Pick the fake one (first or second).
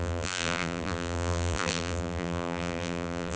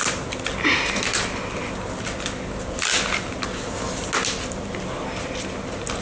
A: first